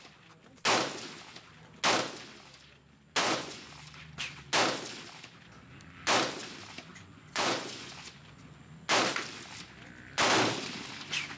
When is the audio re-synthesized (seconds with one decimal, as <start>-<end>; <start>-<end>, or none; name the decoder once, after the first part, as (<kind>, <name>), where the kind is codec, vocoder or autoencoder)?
3.2-3.7 (vocoder, Vocos); 6.9-8.6

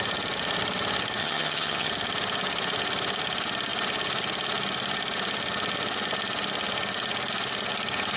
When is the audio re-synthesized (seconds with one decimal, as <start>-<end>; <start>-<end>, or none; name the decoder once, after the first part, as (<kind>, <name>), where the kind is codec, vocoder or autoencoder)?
1.2-1.9 (vocoder, HiFi-GAN)